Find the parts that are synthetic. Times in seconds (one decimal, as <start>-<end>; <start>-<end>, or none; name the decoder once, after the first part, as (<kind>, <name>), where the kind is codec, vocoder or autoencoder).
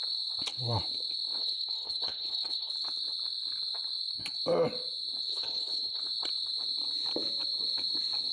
1.4-2.7 (codec, HILCodec); 5.3-6.0